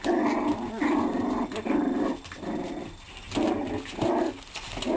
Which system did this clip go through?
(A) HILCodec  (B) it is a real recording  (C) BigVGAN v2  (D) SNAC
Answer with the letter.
B